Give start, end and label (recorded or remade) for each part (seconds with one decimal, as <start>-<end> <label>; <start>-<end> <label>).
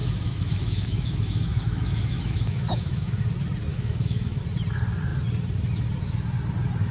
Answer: 0.0-3.2 remade; 3.2-3.7 recorded; 3.7-4.4 remade; 4.4-6.9 recorded